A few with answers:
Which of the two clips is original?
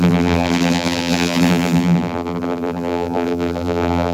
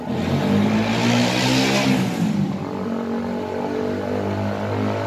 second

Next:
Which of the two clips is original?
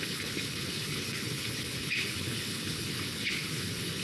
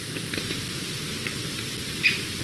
second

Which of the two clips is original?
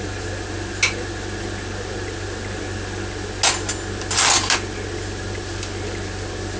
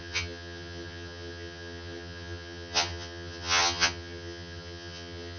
first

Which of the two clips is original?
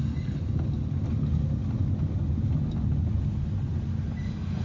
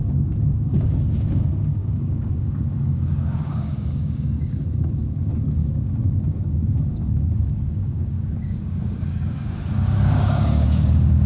first